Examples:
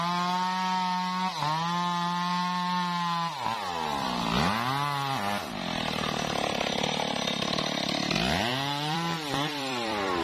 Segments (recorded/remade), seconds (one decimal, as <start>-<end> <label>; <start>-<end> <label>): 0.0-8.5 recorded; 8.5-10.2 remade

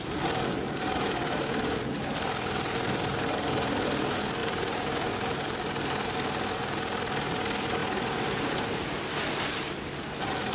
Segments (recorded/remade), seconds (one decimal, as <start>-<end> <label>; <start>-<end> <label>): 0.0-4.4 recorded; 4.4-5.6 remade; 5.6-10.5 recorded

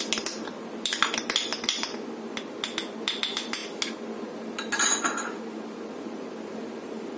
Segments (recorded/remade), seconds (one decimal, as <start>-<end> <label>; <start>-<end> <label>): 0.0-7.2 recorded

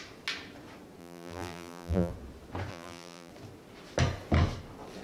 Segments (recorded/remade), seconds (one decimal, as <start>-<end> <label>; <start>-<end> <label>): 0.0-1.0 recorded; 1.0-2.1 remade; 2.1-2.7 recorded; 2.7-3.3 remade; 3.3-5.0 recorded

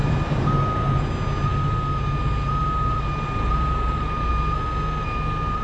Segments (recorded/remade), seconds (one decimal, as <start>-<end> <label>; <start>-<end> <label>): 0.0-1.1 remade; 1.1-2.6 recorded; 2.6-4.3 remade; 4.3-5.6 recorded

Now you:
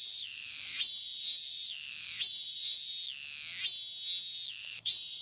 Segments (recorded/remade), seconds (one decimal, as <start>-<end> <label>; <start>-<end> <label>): 0.0-2.9 remade; 2.9-4.5 recorded; 4.5-5.2 remade